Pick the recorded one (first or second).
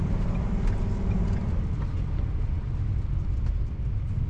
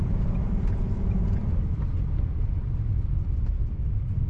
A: first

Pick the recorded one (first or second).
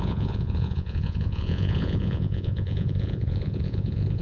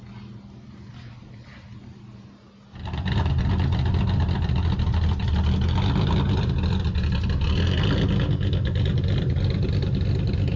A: second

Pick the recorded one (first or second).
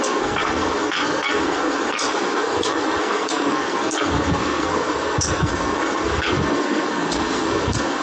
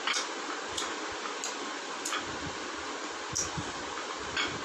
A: second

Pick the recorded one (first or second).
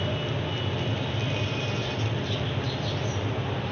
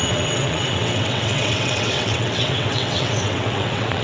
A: first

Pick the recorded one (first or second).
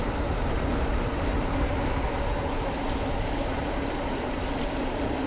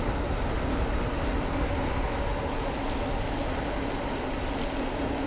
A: second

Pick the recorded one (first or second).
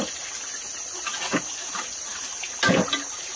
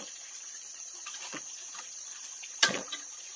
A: first